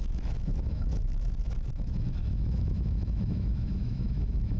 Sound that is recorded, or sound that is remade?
remade